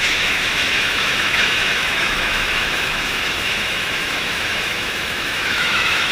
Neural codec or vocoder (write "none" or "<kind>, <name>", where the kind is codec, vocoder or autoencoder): autoencoder, DAC-VAE